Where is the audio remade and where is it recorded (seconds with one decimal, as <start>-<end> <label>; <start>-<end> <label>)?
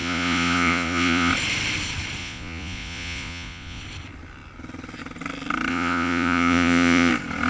0.0-1.3 remade; 1.3-2.2 recorded; 2.2-3.8 remade; 3.8-5.7 recorded; 5.7-7.1 remade; 7.1-7.5 recorded